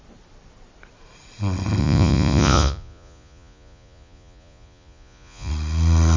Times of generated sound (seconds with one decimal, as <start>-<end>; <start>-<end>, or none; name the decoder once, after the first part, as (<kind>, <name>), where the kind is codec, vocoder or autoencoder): 1.8-5.5 (vocoder, Vocos)